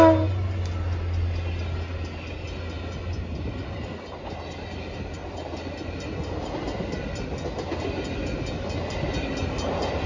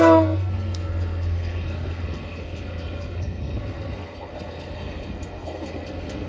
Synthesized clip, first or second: second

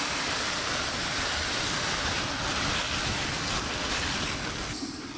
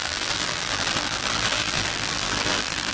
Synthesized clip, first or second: second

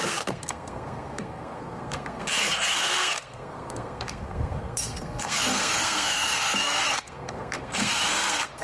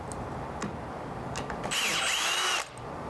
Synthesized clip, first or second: first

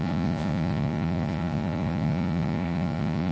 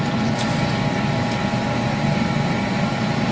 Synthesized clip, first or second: first